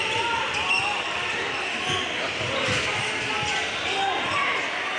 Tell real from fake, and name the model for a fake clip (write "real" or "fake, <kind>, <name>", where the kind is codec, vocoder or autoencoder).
real